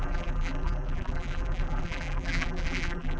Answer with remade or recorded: remade